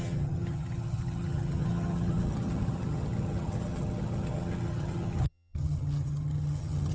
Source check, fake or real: fake